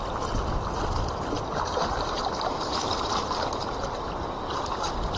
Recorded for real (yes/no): no